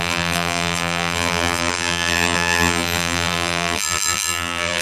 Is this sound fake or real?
fake